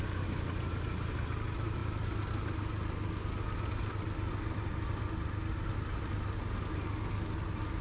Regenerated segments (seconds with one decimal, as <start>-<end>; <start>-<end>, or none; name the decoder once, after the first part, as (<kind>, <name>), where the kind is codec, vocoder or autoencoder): none